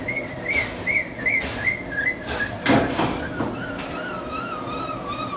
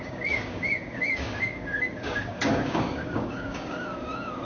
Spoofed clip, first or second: second